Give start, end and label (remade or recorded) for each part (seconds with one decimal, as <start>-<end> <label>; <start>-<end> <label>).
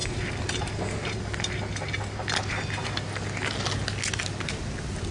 0.0-1.0 recorded; 1.0-1.6 remade; 1.6-5.1 recorded